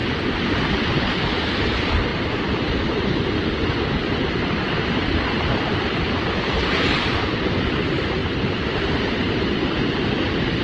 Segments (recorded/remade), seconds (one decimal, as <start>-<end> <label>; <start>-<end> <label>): 0.0-0.9 remade; 0.9-10.6 recorded

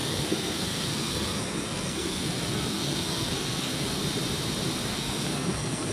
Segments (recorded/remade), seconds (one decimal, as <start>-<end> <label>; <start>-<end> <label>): 0.0-4.0 remade; 4.0-4.9 recorded; 4.9-5.9 remade